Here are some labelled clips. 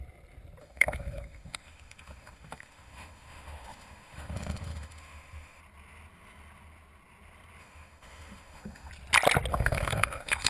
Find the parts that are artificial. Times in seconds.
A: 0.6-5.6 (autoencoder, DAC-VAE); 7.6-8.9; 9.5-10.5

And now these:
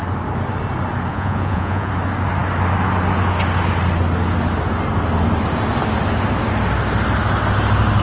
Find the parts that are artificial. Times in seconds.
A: 1.1-1.9 (vocoder, Vocos)

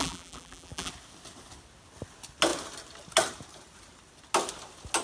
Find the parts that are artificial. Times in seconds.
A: 0.0-0.9 (vocoder, BigVGAN v2)

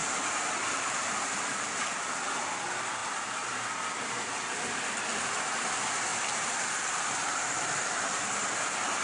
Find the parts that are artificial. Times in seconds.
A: 0.0-2.0 (vocoder, BigVGAN v2); 6.1-8.2

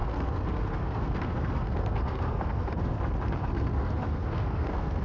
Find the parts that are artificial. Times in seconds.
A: 0.0-3.0 (codec, SNAC); 3.4-5.0

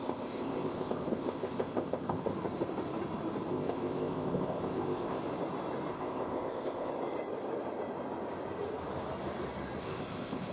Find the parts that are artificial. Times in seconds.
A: 0.0-2.3 (codec, ZipCodec); 3.5-5.2; 5.9-6.9; 9.8-10.5

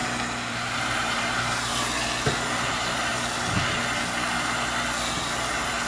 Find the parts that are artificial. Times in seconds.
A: 0.5-1.7 (vocoder, BigVGAN v2); 2.7-3.1

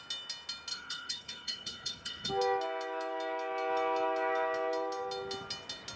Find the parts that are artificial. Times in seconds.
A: 0.7-2.3 (codec, HILCodec)